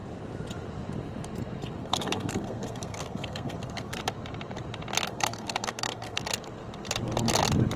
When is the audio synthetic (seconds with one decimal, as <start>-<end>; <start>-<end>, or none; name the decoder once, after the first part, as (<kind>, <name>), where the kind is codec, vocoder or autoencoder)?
1.8-4.0 (codec, SNAC); 5.1-6.2